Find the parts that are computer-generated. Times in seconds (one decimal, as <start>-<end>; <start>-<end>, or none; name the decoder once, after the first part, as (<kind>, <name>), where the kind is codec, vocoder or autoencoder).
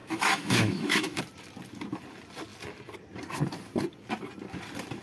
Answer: 0.0-1.2 (autoencoder, DAC-VAE)